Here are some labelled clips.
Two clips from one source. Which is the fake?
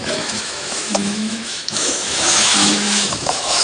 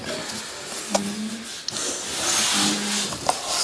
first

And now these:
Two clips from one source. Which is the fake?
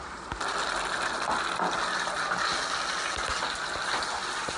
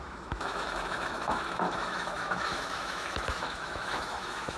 second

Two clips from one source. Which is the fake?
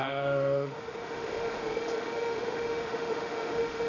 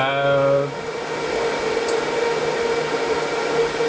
first